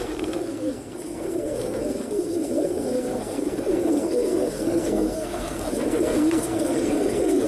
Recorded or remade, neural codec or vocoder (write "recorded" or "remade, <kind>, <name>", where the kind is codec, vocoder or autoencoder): remade, codec, SNAC